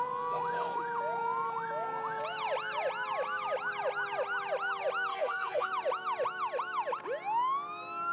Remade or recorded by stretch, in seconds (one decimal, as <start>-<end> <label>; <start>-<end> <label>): 0.0-5.1 recorded; 5.1-5.7 remade; 5.7-8.1 recorded